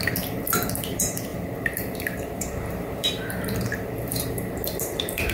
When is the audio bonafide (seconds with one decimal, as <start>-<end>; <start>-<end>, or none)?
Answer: none